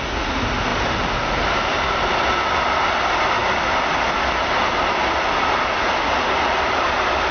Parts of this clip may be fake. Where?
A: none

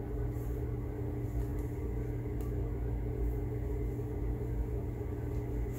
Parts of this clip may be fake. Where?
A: none